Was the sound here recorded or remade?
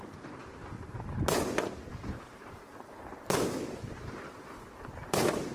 remade